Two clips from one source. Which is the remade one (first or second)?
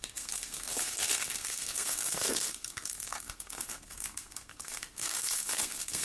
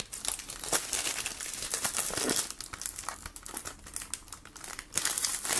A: first